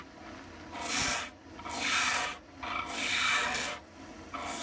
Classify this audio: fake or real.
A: real